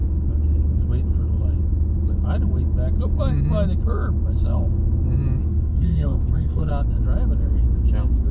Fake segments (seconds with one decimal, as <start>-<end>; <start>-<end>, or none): 5.4-6.7